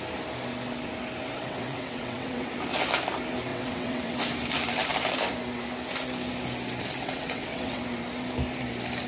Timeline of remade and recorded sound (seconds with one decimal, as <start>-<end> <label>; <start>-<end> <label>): 0.0-1.4 recorded; 1.4-2.5 remade; 2.5-3.5 recorded; 3.5-4.2 remade; 4.2-7.0 recorded; 7.0-7.8 remade; 7.8-9.1 recorded